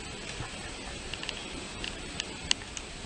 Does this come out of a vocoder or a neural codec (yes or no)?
no